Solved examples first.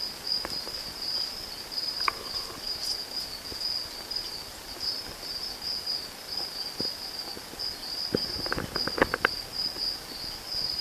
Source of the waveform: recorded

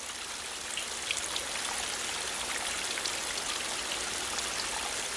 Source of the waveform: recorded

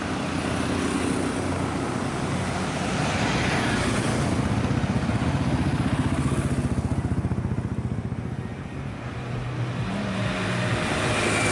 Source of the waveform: recorded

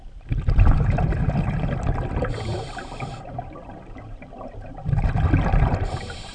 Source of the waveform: remade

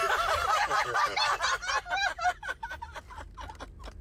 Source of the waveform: recorded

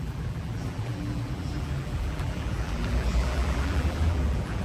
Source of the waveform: remade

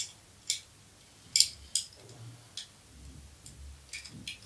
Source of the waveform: recorded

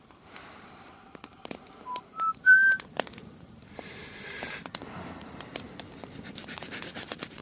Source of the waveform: remade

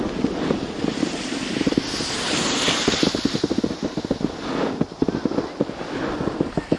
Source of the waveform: recorded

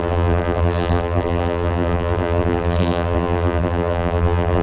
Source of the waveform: remade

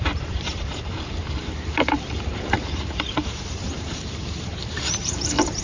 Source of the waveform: remade